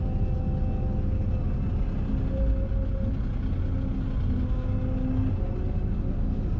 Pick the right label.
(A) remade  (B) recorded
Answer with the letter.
B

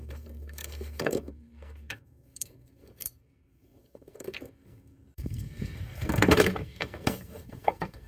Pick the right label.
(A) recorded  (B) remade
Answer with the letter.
B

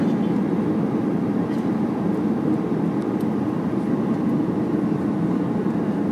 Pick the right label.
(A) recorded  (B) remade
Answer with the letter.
A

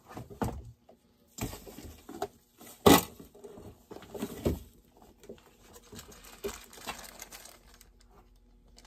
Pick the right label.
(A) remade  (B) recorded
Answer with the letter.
B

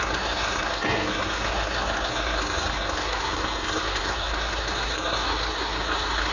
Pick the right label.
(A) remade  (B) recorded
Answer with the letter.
A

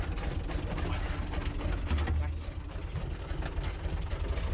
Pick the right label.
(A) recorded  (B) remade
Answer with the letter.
A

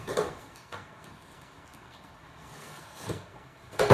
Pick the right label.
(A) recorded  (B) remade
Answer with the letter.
B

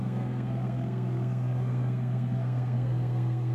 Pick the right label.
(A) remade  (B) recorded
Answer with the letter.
A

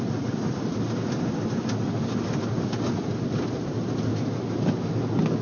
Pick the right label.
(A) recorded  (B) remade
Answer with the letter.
A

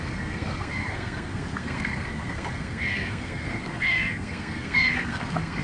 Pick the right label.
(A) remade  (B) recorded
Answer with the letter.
A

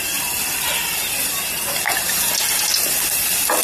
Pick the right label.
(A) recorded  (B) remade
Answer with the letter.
A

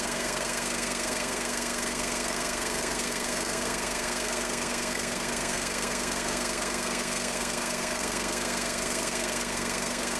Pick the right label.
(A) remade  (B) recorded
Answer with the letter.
A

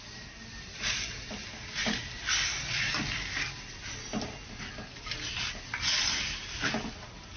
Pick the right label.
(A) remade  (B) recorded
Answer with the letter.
B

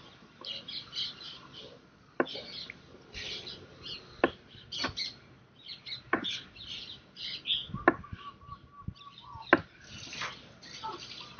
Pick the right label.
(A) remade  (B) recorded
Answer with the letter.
B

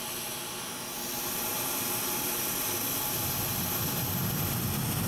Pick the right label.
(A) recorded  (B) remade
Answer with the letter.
A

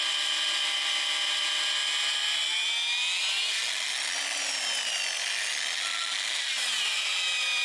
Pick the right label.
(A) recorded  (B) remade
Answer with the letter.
A